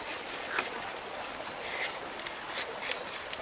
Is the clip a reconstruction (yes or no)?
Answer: no